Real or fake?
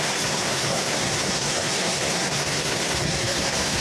fake